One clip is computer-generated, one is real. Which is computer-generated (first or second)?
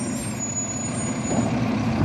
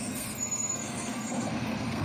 second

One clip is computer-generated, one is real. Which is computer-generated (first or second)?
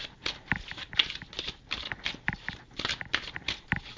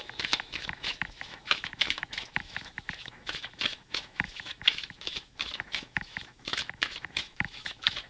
second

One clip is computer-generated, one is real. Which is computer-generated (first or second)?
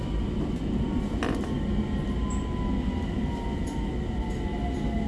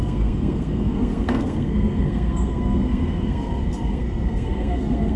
second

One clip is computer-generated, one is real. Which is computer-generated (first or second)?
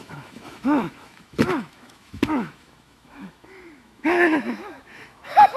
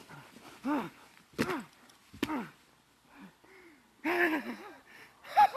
first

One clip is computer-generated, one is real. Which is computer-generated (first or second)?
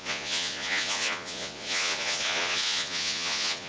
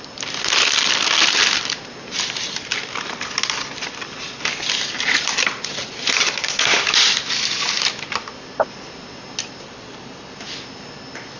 first